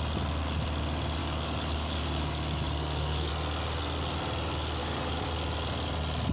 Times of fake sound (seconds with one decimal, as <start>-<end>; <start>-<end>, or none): 1.2-3.3; 4.8-5.3